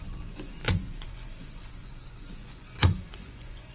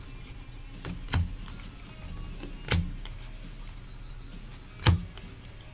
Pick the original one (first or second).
second